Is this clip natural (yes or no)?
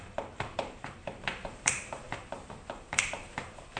no